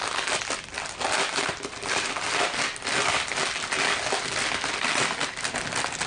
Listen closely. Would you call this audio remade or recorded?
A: recorded